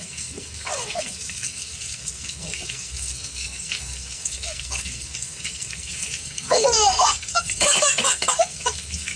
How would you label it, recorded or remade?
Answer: remade